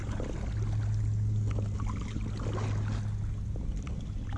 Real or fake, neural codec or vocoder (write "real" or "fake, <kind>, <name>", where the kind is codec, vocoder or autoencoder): real